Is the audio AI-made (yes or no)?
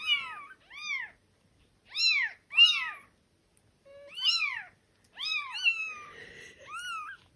no